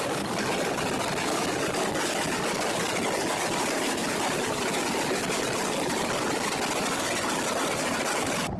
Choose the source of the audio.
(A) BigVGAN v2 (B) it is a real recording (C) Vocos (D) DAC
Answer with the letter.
B